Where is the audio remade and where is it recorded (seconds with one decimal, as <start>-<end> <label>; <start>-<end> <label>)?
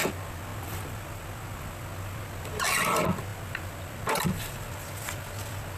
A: 0.0-5.8 recorded